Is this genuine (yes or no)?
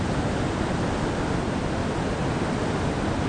yes